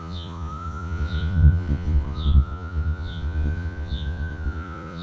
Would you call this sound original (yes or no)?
no